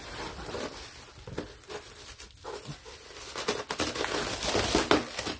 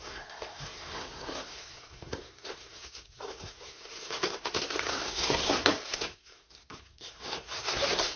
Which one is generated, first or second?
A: second